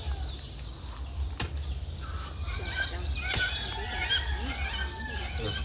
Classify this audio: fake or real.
real